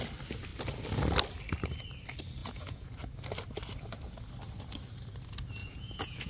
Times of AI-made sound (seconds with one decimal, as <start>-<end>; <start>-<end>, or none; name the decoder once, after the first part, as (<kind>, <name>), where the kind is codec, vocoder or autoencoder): 2.4-2.9 (vocoder, Vocos); 5.6-6.3